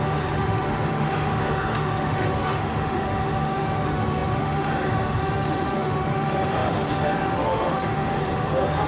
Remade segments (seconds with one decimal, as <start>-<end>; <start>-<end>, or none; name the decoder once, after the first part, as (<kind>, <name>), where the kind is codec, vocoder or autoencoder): 0.0-8.9 (autoencoder, DAC-VAE)